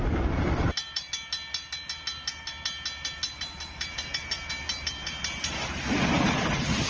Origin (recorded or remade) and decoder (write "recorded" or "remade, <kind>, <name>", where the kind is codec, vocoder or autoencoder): recorded